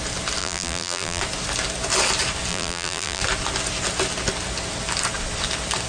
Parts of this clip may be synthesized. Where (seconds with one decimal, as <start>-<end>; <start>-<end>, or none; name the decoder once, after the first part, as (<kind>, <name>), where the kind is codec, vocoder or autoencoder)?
0.4-1.2 (vocoder, BigVGAN v2); 2.5-3.2